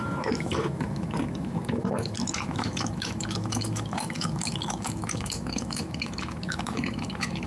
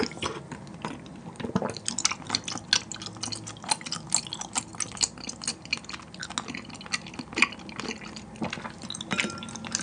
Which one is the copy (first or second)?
first